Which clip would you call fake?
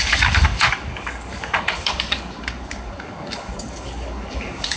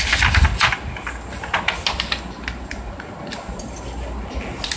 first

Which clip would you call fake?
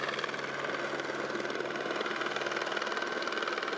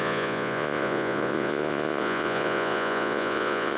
second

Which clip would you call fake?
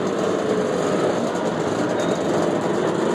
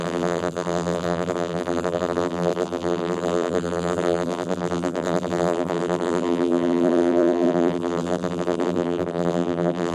second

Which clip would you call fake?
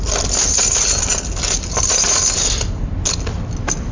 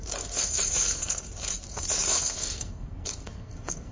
second